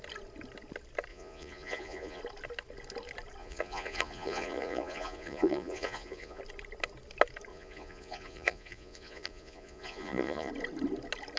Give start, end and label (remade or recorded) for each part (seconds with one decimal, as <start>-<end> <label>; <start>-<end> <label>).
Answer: 0.0-1.1 recorded; 1.1-2.2 remade; 2.2-3.4 recorded; 3.4-6.4 remade; 6.4-7.5 recorded; 7.5-10.5 remade; 10.5-11.4 recorded